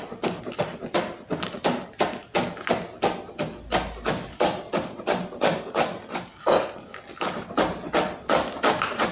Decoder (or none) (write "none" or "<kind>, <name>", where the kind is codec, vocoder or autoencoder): none